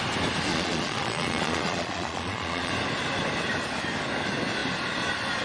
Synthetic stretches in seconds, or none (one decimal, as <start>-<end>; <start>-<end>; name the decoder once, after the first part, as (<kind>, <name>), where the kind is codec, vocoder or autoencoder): 0.5-2.7 (vocoder, Vocos)